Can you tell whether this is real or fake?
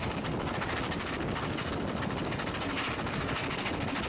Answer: real